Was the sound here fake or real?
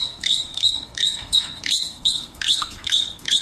fake